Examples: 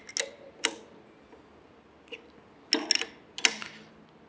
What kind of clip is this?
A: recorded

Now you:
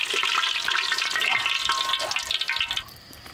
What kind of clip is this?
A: recorded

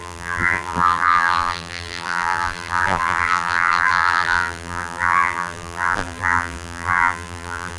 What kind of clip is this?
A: remade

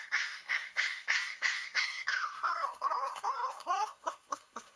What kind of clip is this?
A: remade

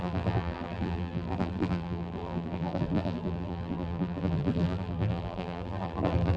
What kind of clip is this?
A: remade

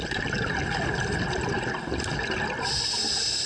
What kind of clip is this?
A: recorded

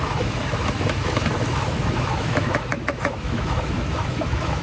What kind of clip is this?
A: remade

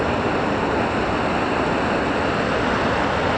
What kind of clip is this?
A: recorded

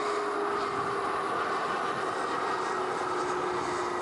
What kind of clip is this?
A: recorded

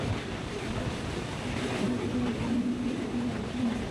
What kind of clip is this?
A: recorded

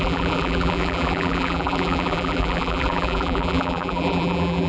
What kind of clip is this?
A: remade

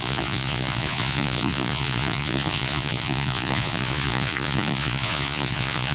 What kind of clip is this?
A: remade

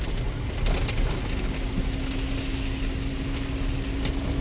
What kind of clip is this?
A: recorded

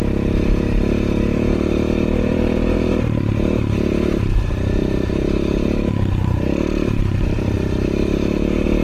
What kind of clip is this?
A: remade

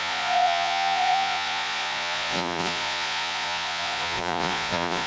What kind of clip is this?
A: remade